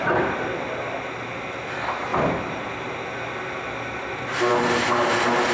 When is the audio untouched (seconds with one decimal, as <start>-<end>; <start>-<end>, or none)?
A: 0.0-5.5